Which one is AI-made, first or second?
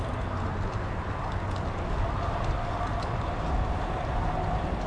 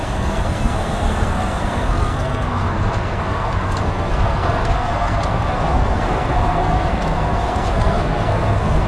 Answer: second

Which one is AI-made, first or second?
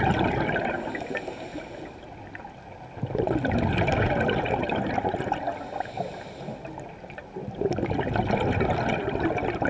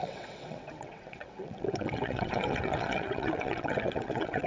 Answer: second